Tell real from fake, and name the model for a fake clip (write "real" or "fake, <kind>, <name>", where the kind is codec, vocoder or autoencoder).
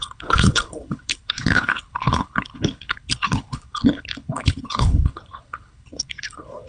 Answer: fake, codec, HILCodec